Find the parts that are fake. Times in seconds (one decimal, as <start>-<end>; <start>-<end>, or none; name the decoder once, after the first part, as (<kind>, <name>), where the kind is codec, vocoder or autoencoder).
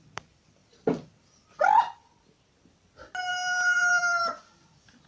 0.6-1.8 (vocoder, BigVGAN v2); 3.3-4.2